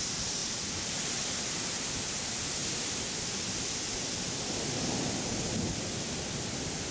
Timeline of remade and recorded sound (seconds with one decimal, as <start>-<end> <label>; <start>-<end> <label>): 0.0-6.9 recorded